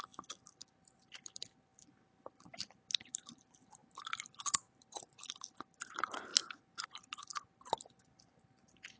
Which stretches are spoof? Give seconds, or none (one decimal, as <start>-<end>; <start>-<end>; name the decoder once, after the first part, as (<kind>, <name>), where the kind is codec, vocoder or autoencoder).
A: 0.0-1.7 (vocoder, BigVGAN v2); 2.3-3.8; 5.3-6.3; 7.0-9.0